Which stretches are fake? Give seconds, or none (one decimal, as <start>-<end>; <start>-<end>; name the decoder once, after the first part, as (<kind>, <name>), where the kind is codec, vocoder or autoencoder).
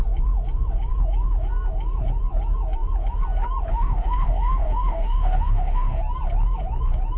3.7-6.0 (autoencoder, DAC-VAE)